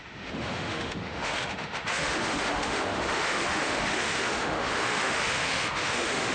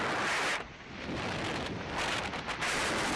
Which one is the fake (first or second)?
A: first